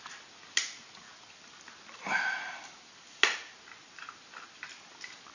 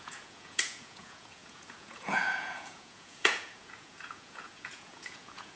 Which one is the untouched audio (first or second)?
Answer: first